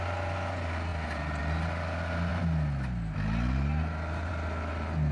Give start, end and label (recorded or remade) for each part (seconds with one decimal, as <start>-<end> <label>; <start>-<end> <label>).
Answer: 0.0-5.1 recorded